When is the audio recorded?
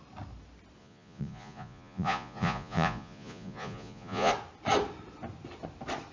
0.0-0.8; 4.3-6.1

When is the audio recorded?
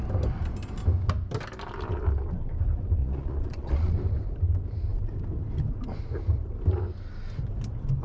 0.0-3.0; 3.9-8.0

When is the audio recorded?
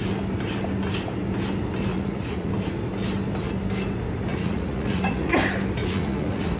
0.0-1.9; 2.5-4.3; 5.3-5.8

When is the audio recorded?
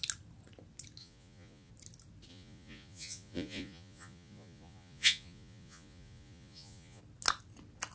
0.0-1.0; 1.7-2.3; 7.0-7.9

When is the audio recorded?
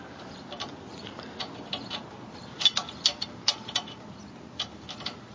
0.0-5.3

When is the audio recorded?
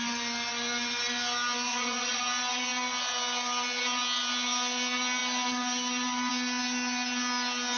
0.0-1.7; 2.2-7.8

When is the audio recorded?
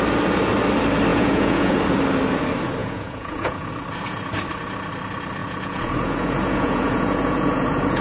0.0-1.1; 1.8-2.8; 3.7-5.4